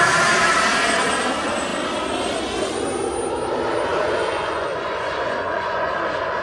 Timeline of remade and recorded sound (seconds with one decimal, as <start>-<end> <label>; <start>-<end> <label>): 0.0-3.9 recorded; 3.9-5.9 remade; 5.9-6.4 recorded